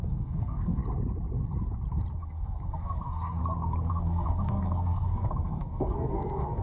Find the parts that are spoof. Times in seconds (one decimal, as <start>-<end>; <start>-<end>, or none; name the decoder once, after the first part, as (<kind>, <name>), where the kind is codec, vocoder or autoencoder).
0.0-0.8 (codec, SNAC); 2.2-3.4; 3.9-6.6